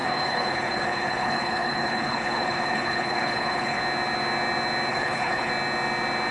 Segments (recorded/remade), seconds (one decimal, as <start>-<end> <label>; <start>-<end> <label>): 0.0-3.8 remade; 3.8-4.9 recorded; 4.9-5.5 remade; 5.5-6.3 recorded